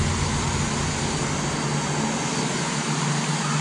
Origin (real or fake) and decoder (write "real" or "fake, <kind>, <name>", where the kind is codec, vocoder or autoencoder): real